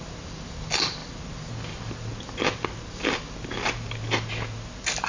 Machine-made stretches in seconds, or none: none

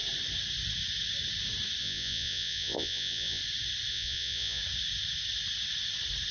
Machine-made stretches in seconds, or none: 1.8-3.4 (vocoder, Vocos); 3.9-4.6

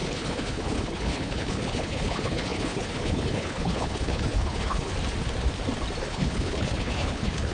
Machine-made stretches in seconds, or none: 0.0-4.9 (codec, HILCodec); 6.0-7.5

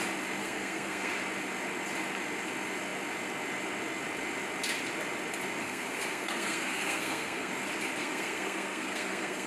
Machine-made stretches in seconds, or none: 0.4-1.1 (codec, SNAC); 5.6-7.5; 8.0-9.5